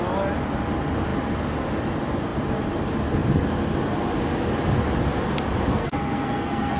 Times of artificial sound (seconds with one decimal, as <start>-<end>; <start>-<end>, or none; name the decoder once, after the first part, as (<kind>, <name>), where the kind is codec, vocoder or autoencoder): 5.7-6.8 (codec, SNAC)